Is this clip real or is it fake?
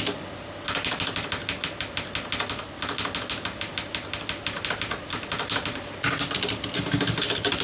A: real